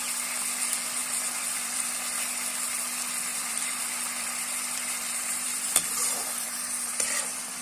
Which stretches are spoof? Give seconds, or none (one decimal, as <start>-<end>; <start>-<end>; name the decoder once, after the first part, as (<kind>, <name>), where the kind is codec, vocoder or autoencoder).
1.0-1.9 (vocoder, BigVGAN v2); 3.3-7.6